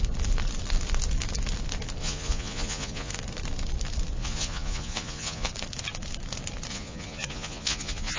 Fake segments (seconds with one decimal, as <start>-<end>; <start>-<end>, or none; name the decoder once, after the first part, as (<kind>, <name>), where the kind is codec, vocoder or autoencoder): 2.0-3.1 (vocoder, Vocos); 4.2-5.5; 6.7-8.2